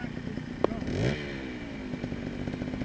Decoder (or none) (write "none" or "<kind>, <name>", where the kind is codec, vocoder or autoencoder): none